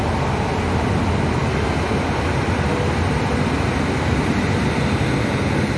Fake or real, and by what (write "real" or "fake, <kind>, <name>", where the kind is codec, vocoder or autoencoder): real